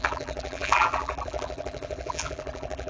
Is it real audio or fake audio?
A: fake